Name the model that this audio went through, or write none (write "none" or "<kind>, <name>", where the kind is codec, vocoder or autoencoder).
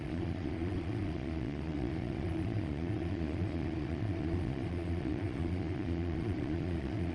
vocoder, Vocos